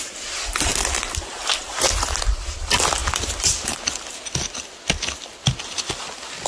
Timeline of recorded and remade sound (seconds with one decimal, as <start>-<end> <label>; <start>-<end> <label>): 0.0-6.5 recorded